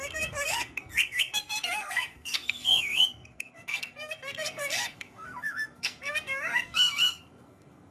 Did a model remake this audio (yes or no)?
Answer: yes